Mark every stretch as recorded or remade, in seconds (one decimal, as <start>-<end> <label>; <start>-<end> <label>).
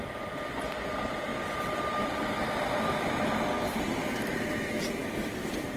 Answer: 0.0-1.3 remade; 1.3-3.8 recorded; 3.8-5.8 remade